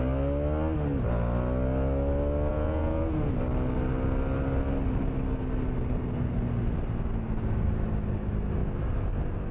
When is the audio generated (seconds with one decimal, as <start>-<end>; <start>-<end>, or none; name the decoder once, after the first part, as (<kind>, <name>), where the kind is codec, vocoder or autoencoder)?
2.5-3.3 (vocoder, Vocos)

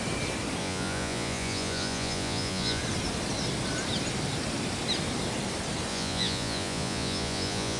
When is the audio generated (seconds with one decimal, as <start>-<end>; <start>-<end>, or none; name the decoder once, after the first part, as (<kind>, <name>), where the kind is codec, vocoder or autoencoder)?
0.6-2.8 (vocoder, Vocos); 5.9-7.8

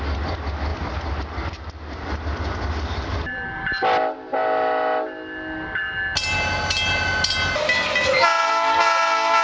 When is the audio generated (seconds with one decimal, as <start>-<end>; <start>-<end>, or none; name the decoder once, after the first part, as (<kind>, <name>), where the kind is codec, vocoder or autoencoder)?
none

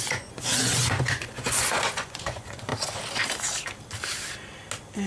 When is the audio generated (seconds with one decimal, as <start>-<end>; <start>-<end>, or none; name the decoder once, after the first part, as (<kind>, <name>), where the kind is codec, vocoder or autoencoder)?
0.0-2.7 (vocoder, Vocos)

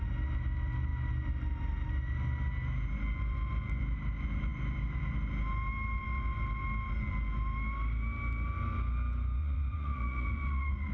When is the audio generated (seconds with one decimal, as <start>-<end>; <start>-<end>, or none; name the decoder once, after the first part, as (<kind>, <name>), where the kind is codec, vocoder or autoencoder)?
9.4-10.9 (vocoder, Vocos)

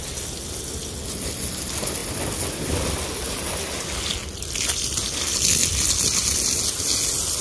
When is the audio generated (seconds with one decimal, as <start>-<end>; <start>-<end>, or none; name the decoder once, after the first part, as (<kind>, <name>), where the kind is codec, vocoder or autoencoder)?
none

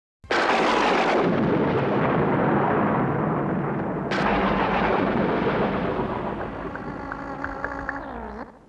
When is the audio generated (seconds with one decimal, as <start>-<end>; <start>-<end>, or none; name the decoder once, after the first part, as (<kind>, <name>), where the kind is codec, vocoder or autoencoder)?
4.3-5.2 (vocoder, Vocos)